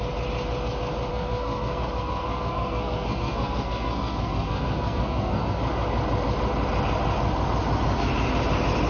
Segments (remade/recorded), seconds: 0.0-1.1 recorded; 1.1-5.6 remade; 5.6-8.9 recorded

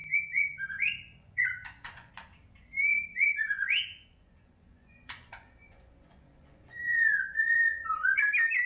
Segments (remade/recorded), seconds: 0.0-2.1 remade; 2.1-3.1 recorded; 3.1-8.2 remade; 8.2-8.7 recorded

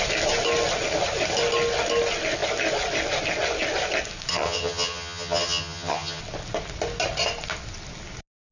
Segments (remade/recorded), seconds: 0.0-4.3 recorded; 4.3-6.2 remade; 6.2-8.5 recorded

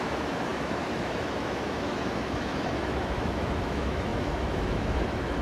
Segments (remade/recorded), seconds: 0.0-5.4 remade

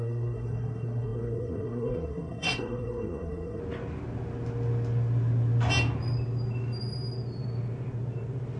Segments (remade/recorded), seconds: 0.0-3.6 remade; 3.6-8.6 recorded

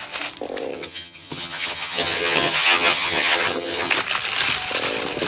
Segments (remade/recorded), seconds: 0.0-0.7 recorded; 0.7-3.9 remade; 3.9-5.3 recorded

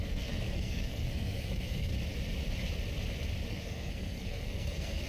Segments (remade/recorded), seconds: 0.0-1.9 remade; 1.9-3.5 recorded; 3.5-5.1 remade

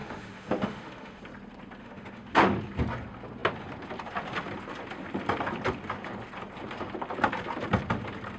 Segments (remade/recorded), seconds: 0.0-1.2 remade; 1.2-1.8 recorded; 1.8-2.6 remade; 2.6-8.4 recorded